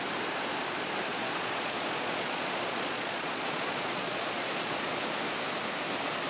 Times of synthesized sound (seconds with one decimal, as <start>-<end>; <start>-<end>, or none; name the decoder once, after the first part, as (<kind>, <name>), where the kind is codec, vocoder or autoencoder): 1.1-4.9 (vocoder, Vocos)